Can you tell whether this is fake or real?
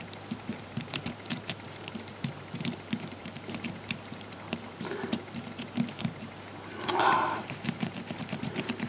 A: fake